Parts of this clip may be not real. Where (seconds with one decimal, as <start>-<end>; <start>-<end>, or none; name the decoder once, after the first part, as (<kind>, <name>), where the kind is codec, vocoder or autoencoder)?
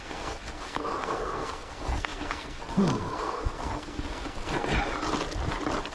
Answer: 0.0-4.7 (codec, SNAC)